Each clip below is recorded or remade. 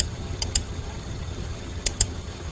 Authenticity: remade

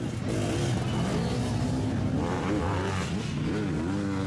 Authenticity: recorded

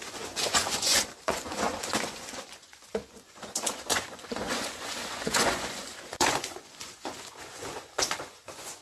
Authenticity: remade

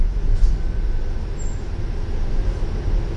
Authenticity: recorded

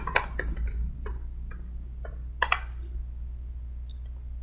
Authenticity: recorded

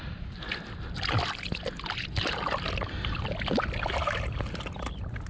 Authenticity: recorded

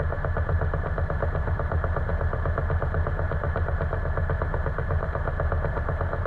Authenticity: remade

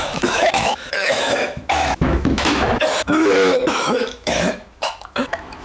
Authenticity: remade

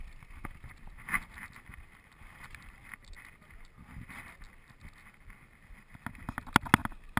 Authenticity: recorded